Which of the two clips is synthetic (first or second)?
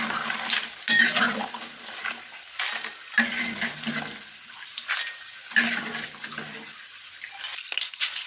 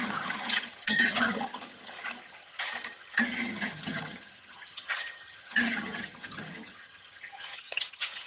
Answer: second